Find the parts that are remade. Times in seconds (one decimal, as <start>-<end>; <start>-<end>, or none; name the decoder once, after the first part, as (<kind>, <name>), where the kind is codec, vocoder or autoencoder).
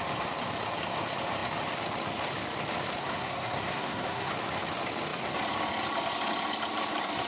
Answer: 3.0-4.3 (codec, SNAC)